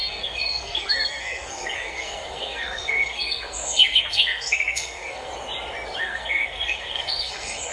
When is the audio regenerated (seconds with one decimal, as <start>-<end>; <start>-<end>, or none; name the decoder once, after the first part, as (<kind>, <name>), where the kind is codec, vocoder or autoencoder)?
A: 0.0-5.3 (codec, SNAC); 6.0-7.7